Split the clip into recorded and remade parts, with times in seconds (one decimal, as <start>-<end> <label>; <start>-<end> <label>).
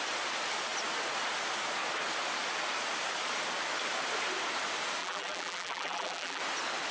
0.0-5.0 recorded; 5.0-6.4 remade; 6.4-6.9 recorded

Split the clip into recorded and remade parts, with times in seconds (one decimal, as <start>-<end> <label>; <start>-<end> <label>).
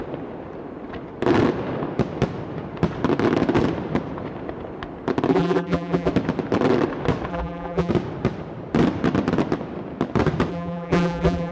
0.0-5.3 recorded; 5.3-6.1 remade; 6.1-7.3 recorded; 7.3-7.9 remade; 7.9-10.5 recorded; 10.5-11.5 remade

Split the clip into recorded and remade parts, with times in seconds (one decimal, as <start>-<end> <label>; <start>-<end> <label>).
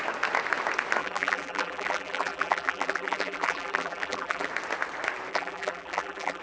0.0-1.0 recorded; 1.0-4.5 remade; 4.5-5.3 recorded; 5.3-6.4 remade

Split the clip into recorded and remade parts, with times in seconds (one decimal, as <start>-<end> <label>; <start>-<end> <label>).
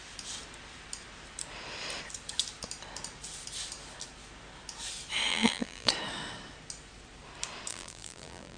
0.0-5.3 recorded; 5.3-5.9 remade; 5.9-7.7 recorded; 7.7-8.6 remade